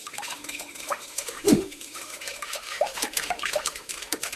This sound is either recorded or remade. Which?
remade